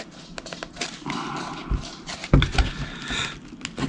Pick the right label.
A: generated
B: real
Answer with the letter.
B